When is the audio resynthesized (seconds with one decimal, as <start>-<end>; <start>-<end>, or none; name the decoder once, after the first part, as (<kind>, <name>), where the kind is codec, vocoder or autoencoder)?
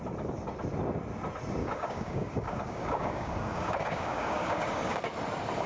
1.6-5.0 (codec, DAC)